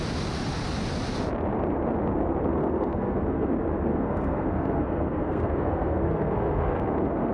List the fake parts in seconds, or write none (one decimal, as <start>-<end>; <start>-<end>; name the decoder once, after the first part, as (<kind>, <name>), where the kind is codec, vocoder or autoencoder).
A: 2.5-3.5 (codec, SNAC); 3.9-7.3